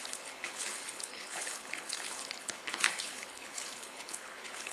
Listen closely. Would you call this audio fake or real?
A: fake